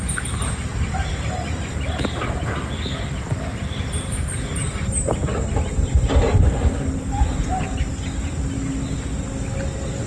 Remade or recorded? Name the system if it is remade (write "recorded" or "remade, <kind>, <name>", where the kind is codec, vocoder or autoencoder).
recorded